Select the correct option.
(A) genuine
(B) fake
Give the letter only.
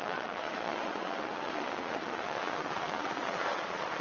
B